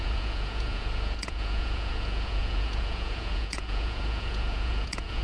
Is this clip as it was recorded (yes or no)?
no